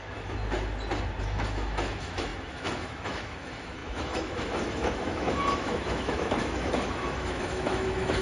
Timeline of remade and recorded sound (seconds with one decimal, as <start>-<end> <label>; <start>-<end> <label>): 0.0-0.4 remade; 0.4-1.2 recorded; 1.2-8.2 remade